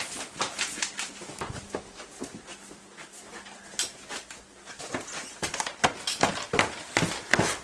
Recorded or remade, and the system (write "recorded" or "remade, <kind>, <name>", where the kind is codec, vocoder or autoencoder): recorded